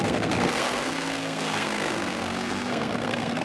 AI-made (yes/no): yes